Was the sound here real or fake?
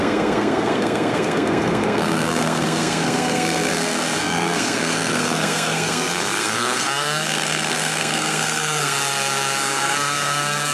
fake